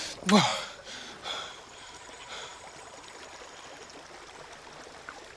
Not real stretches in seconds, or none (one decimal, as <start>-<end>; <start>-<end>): none